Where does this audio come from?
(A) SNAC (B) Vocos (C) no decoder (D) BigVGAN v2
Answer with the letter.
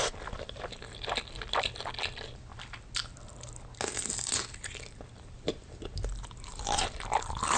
C